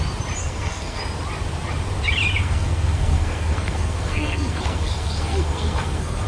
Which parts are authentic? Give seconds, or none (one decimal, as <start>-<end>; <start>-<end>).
0.0-0.4; 1.0-2.4